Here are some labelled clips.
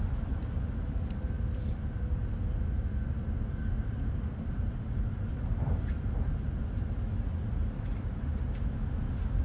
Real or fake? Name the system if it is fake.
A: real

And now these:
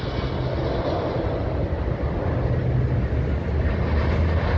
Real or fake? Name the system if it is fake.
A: real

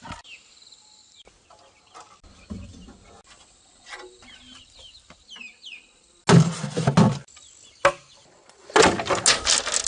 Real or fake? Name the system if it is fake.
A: real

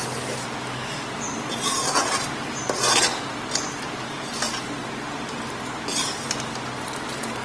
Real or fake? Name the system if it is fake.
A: real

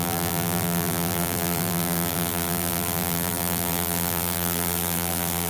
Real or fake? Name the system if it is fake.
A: fake, vocoder, BigVGAN v2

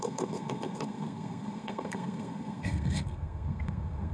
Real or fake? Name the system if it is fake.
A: fake, codec, SNAC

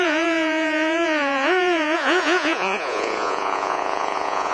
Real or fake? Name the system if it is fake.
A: fake, vocoder, Vocos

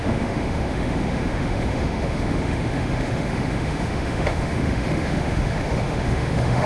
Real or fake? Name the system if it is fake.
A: fake, autoencoder, DAC-VAE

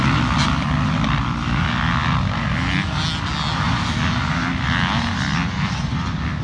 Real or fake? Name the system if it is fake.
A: real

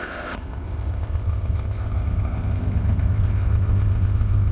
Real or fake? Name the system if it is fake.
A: fake, codec, ZipCodec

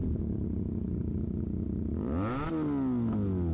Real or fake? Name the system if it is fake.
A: real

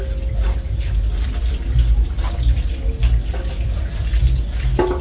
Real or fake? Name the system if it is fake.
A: real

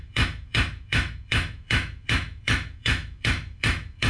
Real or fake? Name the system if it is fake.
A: fake, autoencoder, DAC-VAE